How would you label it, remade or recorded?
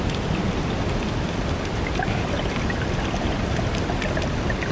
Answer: recorded